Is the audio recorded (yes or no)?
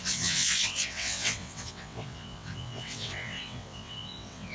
no